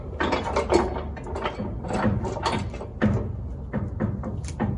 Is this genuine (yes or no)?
yes